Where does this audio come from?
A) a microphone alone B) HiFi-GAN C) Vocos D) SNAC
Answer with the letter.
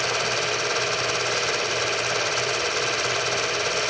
A